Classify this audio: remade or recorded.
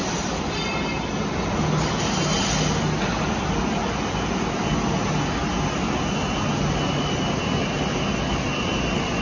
recorded